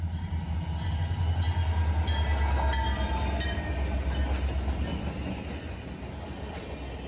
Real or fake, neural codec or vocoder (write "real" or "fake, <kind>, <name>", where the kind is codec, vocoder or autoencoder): real